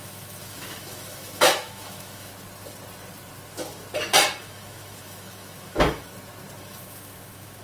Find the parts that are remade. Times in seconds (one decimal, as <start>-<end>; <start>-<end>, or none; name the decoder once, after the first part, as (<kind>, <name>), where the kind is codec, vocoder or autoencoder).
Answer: 0.0-2.3 (autoencoder, DAC-VAE); 4.4-6.1; 6.6-7.6